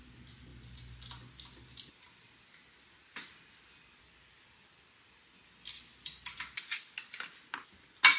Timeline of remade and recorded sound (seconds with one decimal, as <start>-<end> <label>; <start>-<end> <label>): 0.0-8.2 recorded

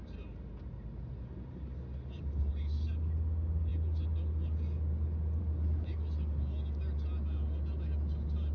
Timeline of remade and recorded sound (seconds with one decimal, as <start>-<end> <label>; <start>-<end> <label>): 0.0-8.5 recorded

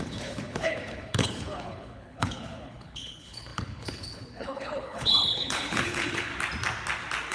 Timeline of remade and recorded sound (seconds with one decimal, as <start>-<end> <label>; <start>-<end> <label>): 0.0-6.3 remade; 6.3-7.3 recorded

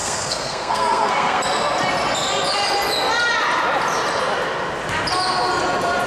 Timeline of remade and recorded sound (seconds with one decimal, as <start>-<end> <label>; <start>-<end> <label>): 0.0-1.4 remade; 1.4-6.1 recorded